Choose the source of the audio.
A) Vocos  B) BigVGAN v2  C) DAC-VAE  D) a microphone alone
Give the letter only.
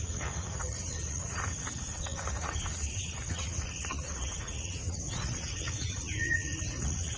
A